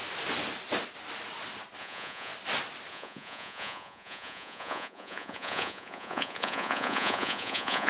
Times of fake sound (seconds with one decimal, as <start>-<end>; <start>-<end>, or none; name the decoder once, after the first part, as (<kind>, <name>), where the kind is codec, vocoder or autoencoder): 1.8-2.3 (vocoder, Vocos); 2.9-7.9